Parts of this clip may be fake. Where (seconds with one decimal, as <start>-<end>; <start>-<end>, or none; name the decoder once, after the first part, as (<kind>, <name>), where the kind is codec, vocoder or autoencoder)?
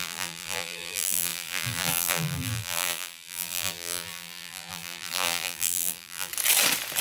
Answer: 0.0-6.3 (vocoder, BigVGAN v2)